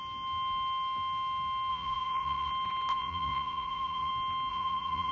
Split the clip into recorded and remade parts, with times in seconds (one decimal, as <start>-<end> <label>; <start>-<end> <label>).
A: 0.0-1.7 recorded; 1.7-2.5 remade; 2.5-2.9 recorded; 2.9-4.1 remade; 4.1-4.5 recorded; 4.5-5.1 remade